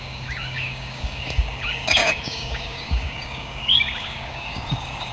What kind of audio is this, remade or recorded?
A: remade